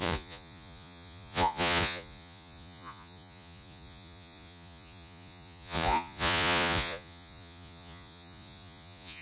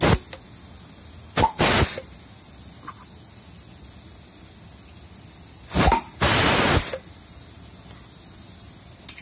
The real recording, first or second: second